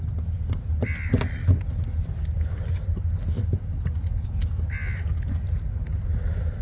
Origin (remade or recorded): recorded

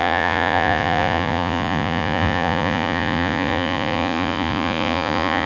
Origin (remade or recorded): remade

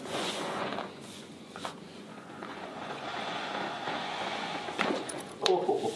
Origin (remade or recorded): remade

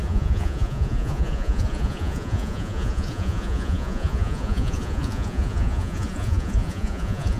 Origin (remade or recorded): remade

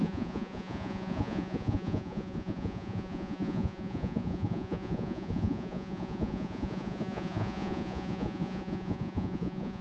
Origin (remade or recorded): remade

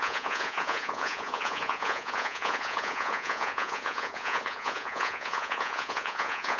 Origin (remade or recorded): remade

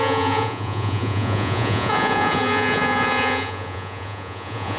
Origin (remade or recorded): remade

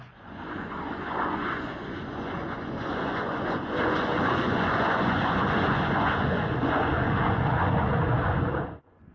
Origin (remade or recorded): remade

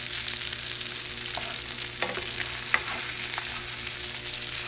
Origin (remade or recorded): recorded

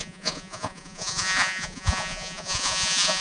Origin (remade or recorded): remade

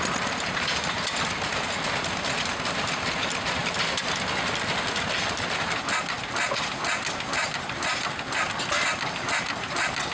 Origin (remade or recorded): recorded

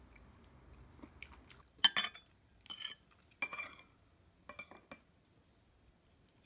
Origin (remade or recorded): recorded